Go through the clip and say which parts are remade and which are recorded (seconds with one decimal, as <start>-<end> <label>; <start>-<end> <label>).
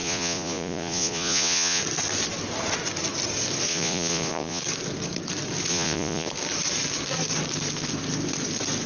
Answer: 0.0-1.8 remade; 1.8-3.7 recorded; 3.7-4.6 remade; 4.6-5.7 recorded; 5.7-6.3 remade; 6.3-8.9 recorded